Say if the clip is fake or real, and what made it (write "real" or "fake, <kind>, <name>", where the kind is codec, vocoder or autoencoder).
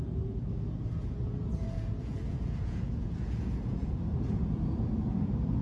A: fake, vocoder, Vocos